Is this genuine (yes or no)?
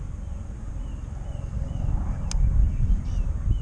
yes